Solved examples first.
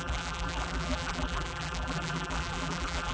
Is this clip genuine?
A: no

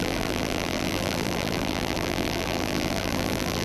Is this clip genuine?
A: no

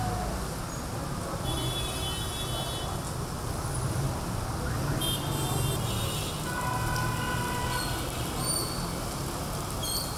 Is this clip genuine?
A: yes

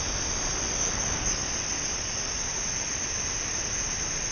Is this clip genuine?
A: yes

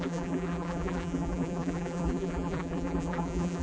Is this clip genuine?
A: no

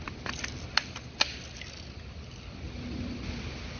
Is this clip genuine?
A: yes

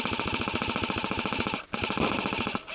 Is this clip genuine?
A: yes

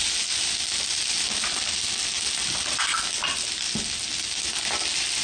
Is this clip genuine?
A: yes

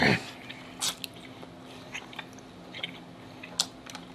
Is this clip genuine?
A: yes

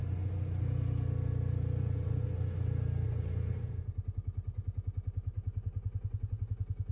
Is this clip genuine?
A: yes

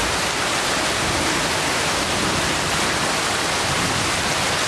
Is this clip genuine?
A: yes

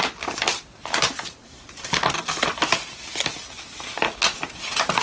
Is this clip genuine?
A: yes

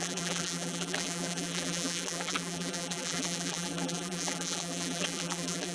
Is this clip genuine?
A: no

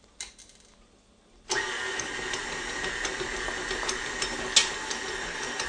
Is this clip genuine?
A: yes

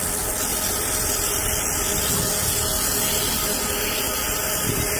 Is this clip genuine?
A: yes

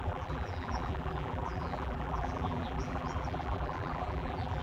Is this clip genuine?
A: no